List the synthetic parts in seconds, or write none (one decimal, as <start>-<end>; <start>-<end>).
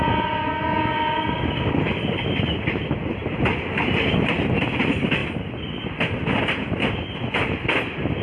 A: 3.2-3.9